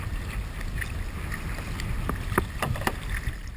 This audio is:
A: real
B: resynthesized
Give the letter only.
A